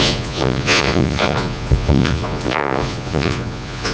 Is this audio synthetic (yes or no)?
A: yes